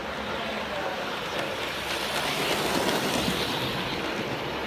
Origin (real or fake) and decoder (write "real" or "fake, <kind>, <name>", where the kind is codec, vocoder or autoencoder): real